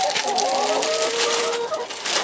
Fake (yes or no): no